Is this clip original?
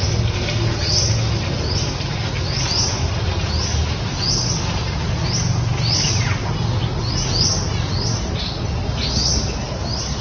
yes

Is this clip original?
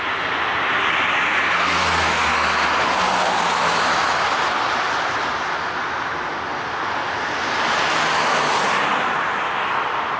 yes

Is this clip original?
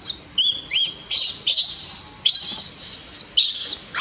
yes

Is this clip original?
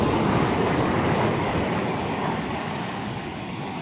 no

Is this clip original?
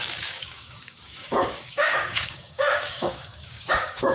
no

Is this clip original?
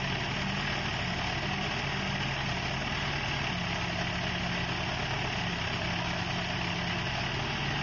yes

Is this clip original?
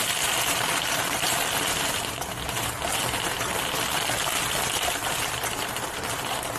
yes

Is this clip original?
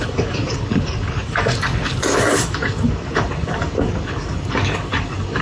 no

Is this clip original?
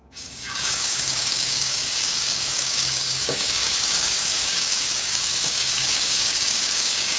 no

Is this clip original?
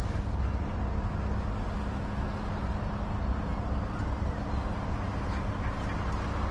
yes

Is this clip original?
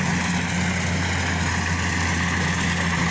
yes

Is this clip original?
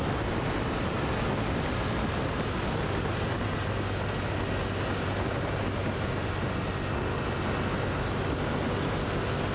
yes